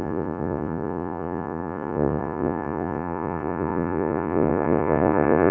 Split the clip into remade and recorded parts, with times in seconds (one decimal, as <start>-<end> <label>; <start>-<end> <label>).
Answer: 0.0-5.5 remade

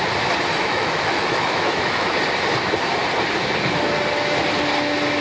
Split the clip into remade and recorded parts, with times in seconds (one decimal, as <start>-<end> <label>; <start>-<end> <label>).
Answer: 0.0-0.5 recorded; 0.5-2.1 remade; 2.1-5.2 recorded